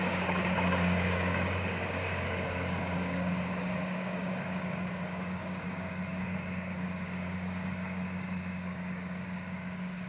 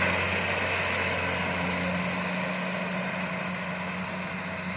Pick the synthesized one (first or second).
first